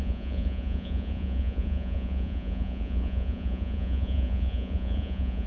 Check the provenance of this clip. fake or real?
fake